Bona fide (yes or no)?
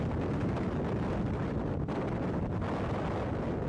yes